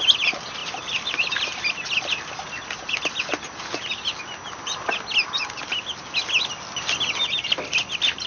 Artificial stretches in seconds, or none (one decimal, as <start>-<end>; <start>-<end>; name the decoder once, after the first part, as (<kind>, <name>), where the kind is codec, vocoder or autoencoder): none